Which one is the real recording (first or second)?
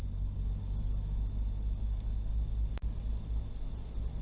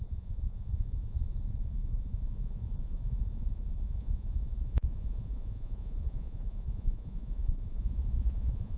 first